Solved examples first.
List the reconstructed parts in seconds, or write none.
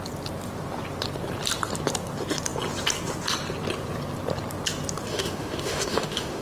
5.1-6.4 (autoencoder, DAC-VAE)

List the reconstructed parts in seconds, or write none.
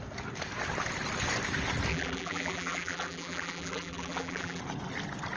1.9-4.6 (vocoder, BigVGAN v2)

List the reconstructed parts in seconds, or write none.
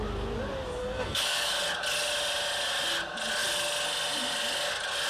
0.8-1.5 (codec, SNAC)